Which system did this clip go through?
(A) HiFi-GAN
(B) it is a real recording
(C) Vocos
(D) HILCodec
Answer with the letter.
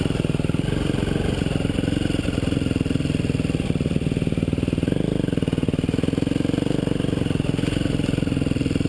B